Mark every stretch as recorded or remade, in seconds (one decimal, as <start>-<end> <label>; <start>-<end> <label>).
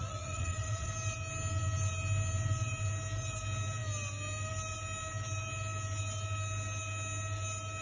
0.0-0.9 remade; 0.9-7.8 recorded